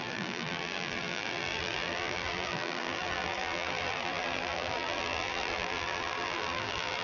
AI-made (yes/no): yes